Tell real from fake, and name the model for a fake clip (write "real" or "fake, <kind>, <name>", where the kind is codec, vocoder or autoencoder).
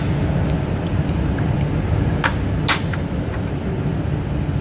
real